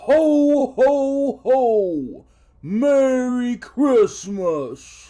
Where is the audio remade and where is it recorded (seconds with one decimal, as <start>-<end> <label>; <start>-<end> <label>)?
0.0-4.1 recorded; 4.1-5.1 remade